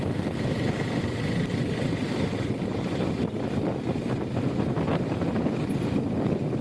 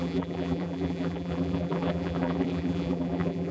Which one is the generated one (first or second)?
second